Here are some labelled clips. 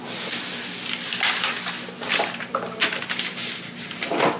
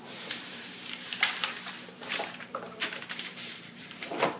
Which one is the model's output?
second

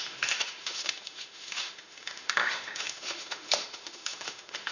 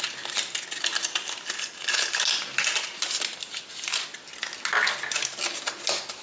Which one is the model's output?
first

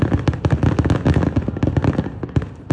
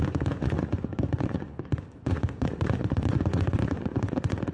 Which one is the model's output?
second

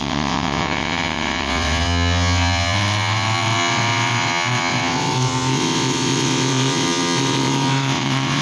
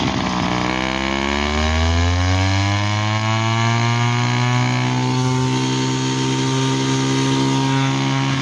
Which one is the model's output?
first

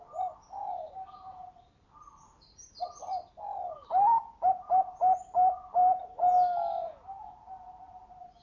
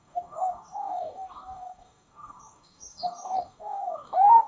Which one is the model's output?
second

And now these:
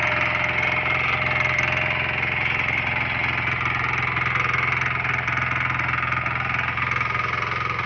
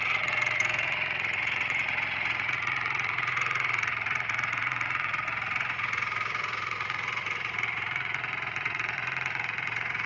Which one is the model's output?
second